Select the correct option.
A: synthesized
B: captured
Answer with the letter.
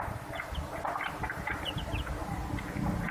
B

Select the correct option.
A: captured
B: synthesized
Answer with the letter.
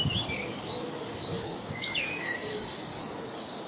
B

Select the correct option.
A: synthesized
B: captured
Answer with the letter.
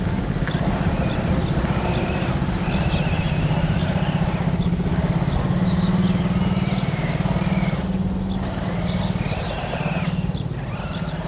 B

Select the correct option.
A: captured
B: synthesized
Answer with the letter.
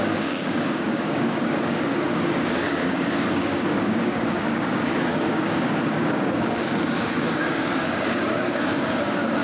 B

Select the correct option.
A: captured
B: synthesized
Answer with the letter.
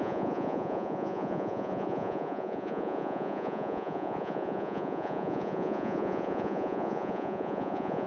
B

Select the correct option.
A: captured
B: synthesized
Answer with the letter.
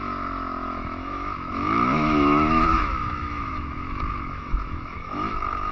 B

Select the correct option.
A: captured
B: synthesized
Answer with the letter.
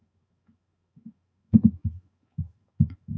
B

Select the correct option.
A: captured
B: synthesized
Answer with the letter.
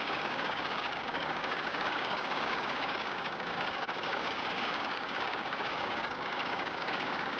B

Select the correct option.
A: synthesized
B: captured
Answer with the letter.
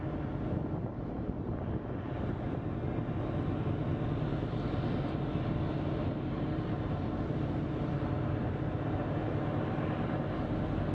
B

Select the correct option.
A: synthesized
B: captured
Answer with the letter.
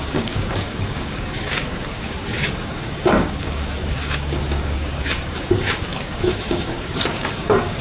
A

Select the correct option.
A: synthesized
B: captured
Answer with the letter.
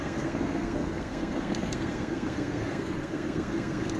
A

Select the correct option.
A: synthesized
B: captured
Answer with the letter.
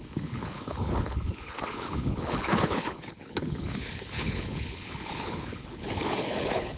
A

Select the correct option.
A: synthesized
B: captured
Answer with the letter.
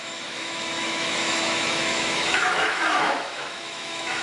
A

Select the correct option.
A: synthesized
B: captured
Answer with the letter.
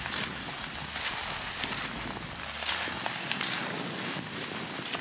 B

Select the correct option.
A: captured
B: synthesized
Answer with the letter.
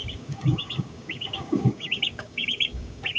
B